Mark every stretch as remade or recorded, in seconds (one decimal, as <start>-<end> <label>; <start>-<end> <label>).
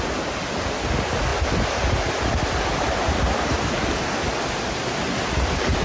0.0-5.8 recorded